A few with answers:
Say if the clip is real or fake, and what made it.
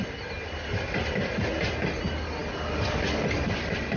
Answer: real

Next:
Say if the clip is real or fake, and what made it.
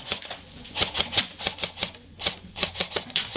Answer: fake, vocoder, Vocos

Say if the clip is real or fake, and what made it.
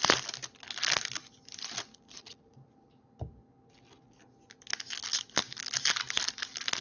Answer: real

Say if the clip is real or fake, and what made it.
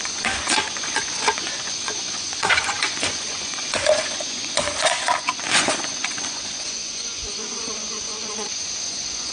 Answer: fake, vocoder, Vocos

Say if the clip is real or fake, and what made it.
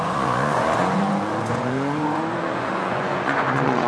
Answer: fake, vocoder, Vocos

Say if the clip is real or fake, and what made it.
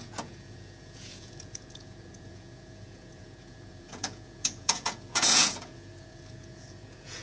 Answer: fake, vocoder, Vocos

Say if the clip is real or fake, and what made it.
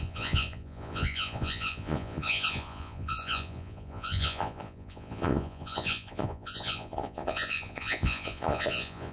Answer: fake, vocoder, Vocos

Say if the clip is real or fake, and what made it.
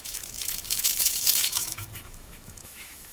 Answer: fake, autoencoder, DAC-VAE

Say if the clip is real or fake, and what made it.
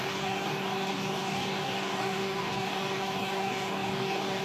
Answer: fake, codec, DAC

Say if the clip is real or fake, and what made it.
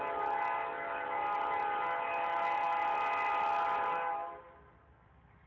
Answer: real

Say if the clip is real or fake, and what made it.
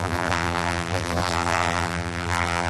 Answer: fake, vocoder, BigVGAN v2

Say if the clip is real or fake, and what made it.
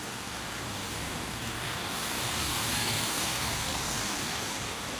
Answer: fake, codec, DAC